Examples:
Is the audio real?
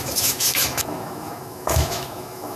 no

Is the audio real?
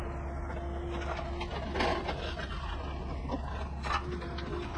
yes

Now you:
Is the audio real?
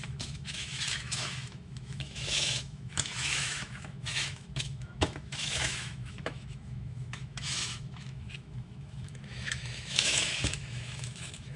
no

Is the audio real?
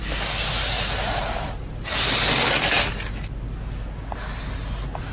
yes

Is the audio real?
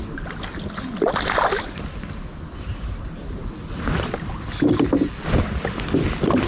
yes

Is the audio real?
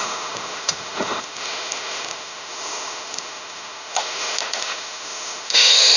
no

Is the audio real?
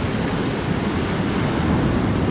yes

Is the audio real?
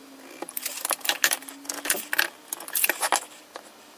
yes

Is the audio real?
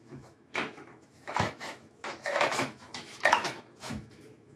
no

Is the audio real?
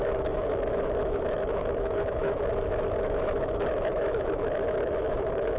no